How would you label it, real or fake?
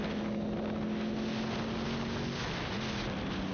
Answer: real